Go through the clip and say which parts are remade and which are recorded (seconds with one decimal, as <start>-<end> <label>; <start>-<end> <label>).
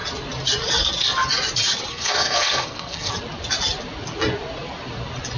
0.0-1.9 recorded; 1.9-3.1 remade; 3.1-5.4 recorded